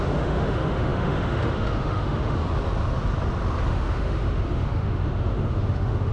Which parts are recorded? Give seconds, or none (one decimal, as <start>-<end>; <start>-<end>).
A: 2.4-3.7